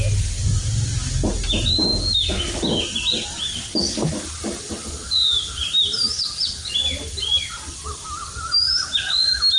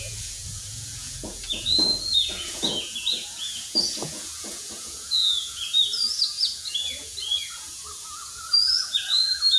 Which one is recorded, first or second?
first